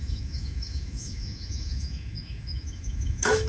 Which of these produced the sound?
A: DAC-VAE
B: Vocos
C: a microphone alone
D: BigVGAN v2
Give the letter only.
A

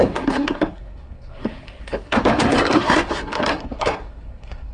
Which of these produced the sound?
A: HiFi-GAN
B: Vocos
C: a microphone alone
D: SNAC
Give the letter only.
D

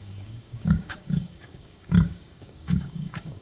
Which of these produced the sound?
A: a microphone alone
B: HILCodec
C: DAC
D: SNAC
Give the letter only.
C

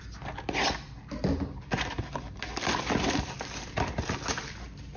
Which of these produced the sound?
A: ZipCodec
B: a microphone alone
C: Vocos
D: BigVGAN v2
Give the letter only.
B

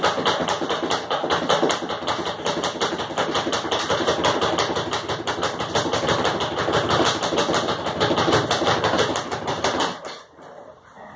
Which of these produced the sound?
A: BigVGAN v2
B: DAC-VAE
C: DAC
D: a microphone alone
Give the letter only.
D